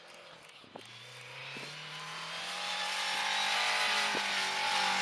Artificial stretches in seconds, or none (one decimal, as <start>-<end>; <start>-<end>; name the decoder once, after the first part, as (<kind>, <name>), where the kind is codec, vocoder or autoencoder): none